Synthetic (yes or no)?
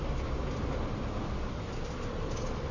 no